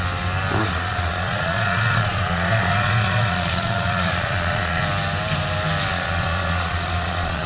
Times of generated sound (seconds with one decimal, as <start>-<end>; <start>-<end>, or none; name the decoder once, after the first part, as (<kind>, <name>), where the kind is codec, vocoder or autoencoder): 0.6-4.8 (vocoder, Vocos); 5.9-7.5